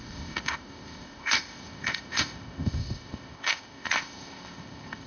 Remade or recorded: remade